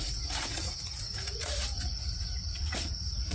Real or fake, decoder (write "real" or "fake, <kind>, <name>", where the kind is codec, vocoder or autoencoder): fake, vocoder, Vocos